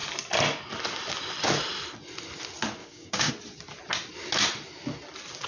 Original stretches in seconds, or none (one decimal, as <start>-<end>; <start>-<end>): 0.0-2.8; 3.3-5.5